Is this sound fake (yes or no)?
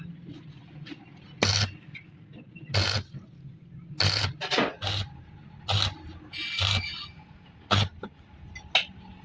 no